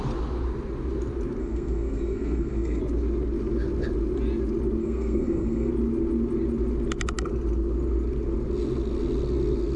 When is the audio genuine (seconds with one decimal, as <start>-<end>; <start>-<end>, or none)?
0.0-1.4; 2.8-4.8; 5.7-9.8